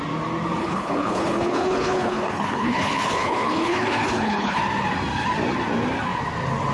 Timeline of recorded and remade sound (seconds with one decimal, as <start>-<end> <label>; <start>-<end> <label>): 0.0-0.6 recorded; 0.6-4.6 remade; 4.6-6.7 recorded